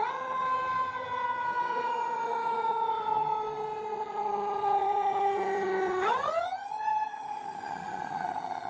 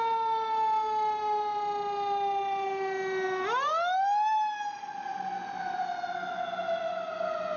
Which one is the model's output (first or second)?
first